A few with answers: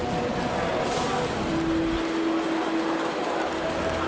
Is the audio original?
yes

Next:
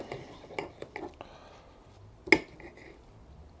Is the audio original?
yes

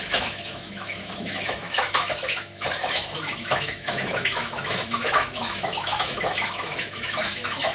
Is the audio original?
no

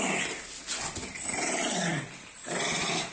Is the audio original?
no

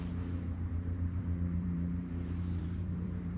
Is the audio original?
no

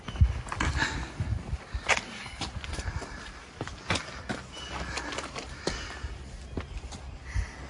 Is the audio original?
yes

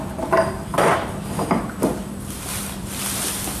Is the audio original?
yes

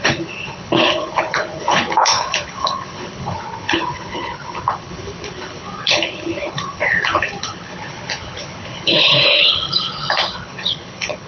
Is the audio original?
no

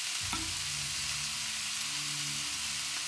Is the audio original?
yes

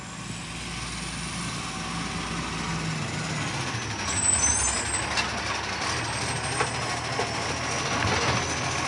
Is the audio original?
yes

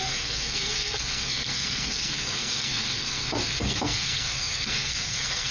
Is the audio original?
no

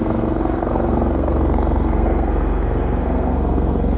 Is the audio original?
no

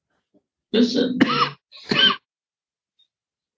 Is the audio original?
yes